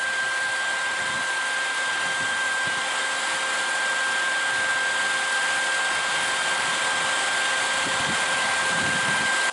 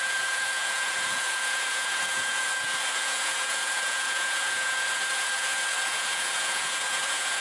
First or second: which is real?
first